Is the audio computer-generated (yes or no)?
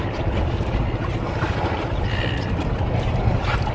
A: no